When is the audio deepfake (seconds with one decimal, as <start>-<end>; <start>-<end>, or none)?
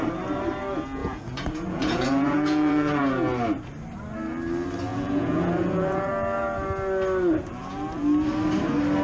1.0-3.0; 4.9-6.1